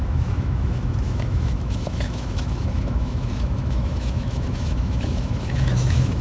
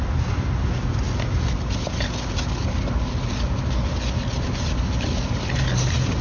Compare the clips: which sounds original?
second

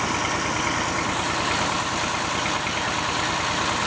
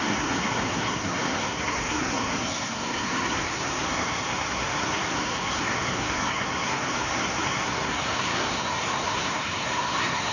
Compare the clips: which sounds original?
first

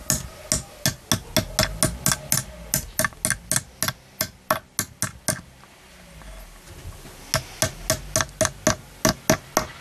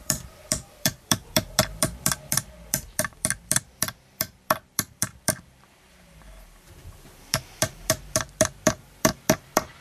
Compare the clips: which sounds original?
first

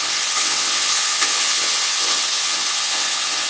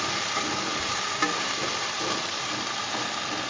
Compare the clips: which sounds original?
second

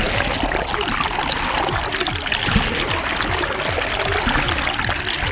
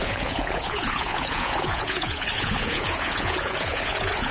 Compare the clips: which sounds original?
first